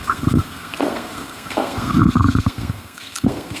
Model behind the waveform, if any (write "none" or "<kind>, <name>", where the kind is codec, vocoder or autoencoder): codec, SNAC